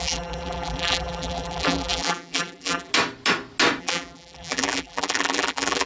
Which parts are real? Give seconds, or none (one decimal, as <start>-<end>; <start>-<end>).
2.9-3.8